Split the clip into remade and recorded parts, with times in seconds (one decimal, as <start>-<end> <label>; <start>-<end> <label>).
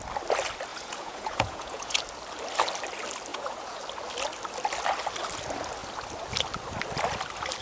0.0-0.7 recorded; 0.7-2.0 remade; 2.0-3.3 recorded; 3.3-3.8 remade; 3.8-7.6 recorded